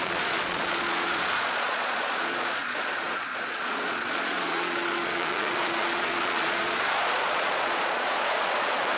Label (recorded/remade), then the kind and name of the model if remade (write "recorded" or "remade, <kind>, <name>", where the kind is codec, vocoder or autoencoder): remade, vocoder, Vocos